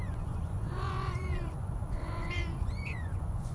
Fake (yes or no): yes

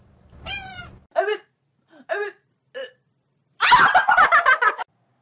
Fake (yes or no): no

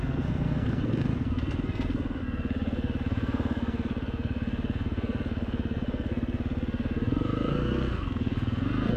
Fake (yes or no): yes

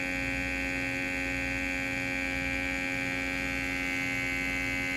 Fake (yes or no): no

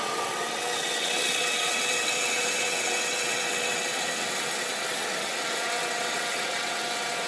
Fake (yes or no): yes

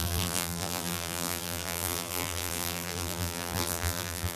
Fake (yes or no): yes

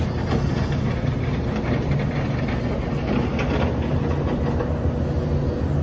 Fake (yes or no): no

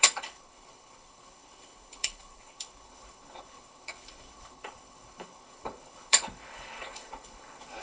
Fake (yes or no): yes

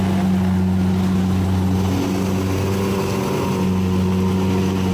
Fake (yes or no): no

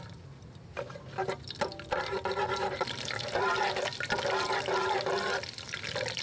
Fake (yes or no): no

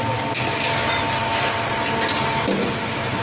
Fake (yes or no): no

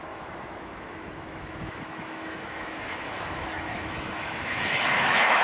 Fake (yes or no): yes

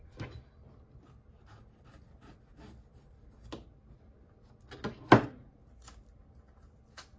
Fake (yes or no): no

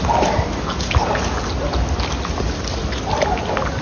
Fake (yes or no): no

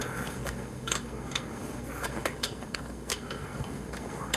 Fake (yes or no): yes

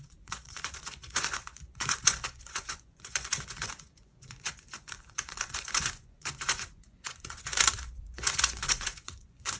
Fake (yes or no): yes